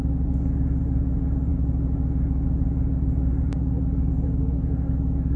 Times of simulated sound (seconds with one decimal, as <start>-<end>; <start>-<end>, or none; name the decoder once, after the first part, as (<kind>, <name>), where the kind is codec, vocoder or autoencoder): none